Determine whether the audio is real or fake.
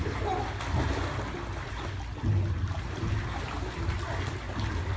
real